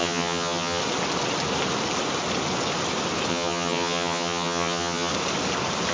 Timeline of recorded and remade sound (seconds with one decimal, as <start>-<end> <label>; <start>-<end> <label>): 0.0-0.8 remade; 0.8-3.3 recorded; 3.3-5.1 remade; 5.1-5.9 recorded